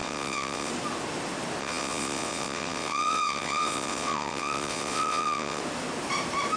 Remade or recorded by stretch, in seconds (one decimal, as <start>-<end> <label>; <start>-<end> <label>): 0.0-0.7 remade; 0.7-1.6 recorded; 1.6-5.6 remade; 5.6-6.6 recorded